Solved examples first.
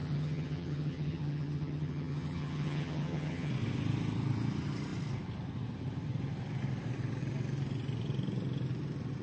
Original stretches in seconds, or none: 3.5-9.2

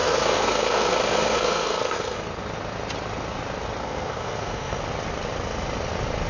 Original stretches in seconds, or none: 2.3-3.8; 4.8-6.3

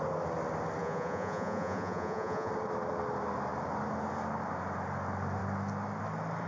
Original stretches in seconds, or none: 0.0-0.8; 2.5-6.5

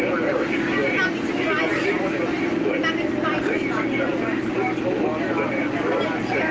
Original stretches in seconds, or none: 0.0-6.5

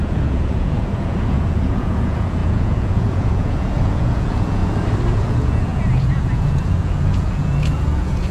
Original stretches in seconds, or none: 4.6-5.1